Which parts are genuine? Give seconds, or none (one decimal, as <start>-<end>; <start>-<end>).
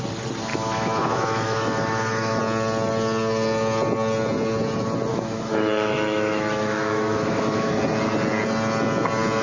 0.0-0.5; 2.4-5.1; 7.8-9.4